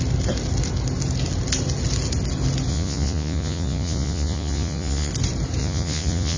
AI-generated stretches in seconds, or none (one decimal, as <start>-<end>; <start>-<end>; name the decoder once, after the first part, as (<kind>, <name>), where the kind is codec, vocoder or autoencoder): 2.7-5.1 (vocoder, Vocos); 5.6-6.4